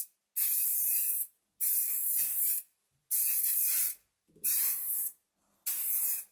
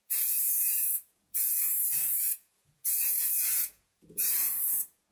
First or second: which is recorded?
first